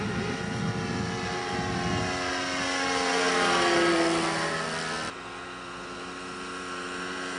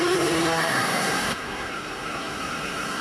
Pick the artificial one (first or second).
second